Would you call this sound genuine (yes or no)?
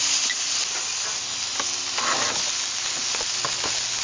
yes